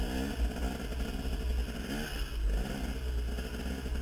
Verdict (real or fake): real